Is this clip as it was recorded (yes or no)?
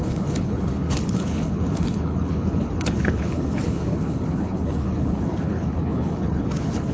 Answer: no